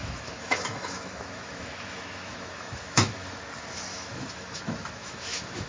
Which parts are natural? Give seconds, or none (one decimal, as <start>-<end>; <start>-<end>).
3.4-3.9; 4.6-5.0